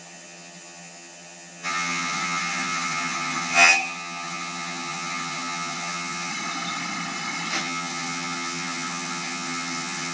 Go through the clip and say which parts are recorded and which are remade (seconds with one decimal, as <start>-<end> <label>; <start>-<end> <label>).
0.0-6.3 remade; 6.3-7.6 recorded; 7.6-10.1 remade

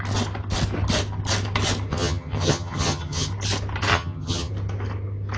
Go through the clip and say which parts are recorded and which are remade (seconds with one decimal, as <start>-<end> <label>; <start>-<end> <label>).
0.0-1.9 recorded; 1.9-3.3 remade; 3.3-3.9 recorded; 3.9-4.5 remade; 4.5-5.4 recorded